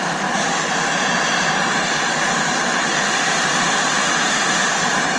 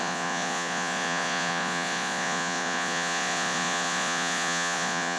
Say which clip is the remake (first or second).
second